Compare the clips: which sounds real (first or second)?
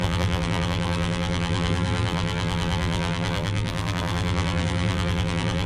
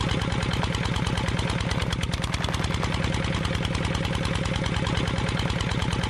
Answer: second